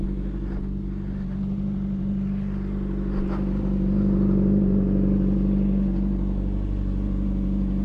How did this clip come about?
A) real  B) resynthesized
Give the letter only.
A